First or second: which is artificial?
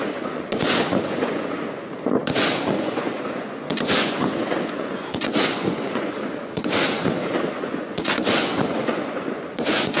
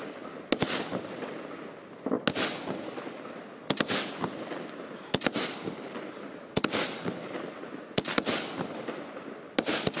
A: first